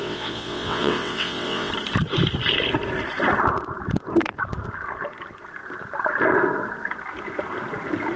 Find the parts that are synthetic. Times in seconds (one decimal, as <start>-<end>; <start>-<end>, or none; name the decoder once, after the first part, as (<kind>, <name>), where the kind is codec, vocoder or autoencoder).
0.0-1.7 (vocoder, WaveNeXt)